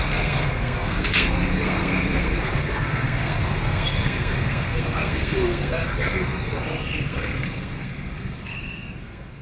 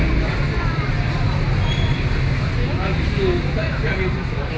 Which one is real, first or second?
second